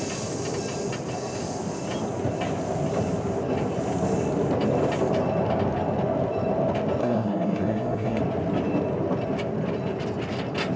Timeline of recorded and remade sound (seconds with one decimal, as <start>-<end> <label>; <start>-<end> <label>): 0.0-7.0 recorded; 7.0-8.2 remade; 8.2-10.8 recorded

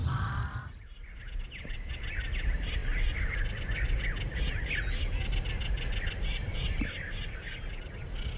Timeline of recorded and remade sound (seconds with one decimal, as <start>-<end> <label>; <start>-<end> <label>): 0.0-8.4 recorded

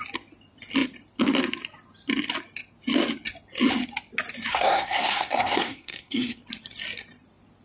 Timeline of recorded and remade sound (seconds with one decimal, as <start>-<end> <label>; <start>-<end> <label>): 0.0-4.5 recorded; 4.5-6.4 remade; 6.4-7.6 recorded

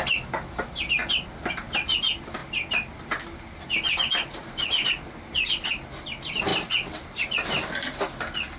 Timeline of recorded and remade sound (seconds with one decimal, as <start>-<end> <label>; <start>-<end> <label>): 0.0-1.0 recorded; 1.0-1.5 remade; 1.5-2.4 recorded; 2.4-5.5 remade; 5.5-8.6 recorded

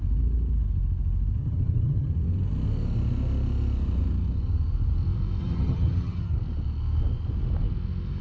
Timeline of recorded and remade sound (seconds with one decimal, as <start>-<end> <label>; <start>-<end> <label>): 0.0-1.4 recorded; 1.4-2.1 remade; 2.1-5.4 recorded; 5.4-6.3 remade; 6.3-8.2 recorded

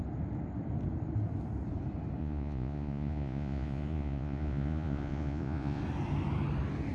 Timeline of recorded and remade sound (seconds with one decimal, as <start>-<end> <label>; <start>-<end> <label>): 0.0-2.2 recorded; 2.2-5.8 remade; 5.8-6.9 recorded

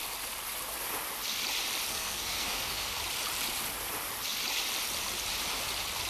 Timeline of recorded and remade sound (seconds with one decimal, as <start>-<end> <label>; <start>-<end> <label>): 0.0-1.9 recorded; 1.9-3.0 remade; 3.0-6.1 recorded